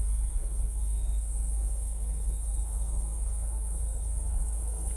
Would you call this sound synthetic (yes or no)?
yes